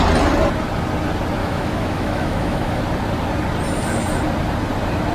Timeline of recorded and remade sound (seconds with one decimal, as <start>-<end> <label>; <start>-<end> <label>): 0.0-1.4 recorded; 1.4-2.8 remade; 2.8-5.1 recorded